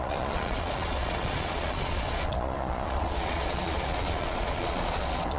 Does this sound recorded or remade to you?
remade